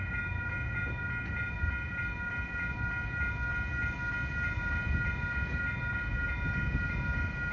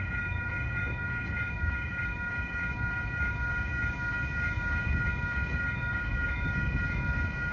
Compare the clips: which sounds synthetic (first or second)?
second